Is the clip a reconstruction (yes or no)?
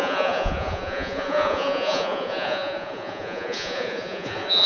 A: yes